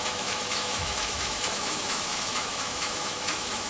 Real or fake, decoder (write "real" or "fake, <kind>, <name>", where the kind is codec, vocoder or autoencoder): fake, autoencoder, DAC-VAE